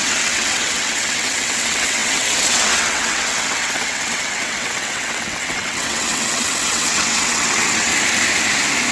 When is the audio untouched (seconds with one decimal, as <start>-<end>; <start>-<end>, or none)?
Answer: 7.9-8.9